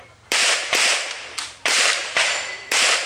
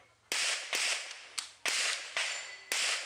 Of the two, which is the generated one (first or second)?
first